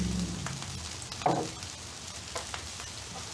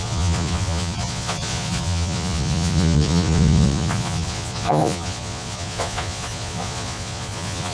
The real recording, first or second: first